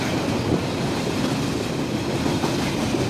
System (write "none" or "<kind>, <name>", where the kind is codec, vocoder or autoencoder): none